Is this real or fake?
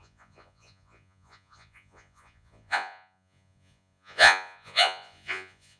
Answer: fake